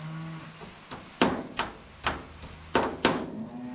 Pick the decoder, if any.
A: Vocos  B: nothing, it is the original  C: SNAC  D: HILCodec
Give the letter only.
B